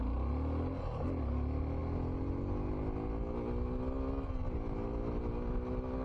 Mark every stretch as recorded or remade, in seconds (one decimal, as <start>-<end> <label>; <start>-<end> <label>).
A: 0.0-6.0 recorded